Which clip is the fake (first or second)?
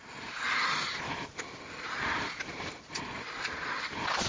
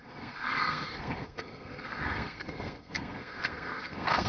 second